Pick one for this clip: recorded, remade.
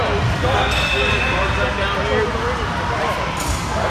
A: recorded